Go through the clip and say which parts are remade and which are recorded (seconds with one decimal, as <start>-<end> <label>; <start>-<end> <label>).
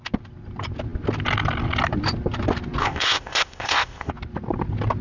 0.0-2.8 recorded; 2.8-4.1 remade; 4.1-5.0 recorded